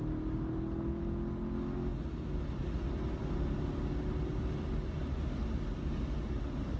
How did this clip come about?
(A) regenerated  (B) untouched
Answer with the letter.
B